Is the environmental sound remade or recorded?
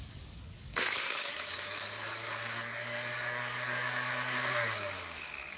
remade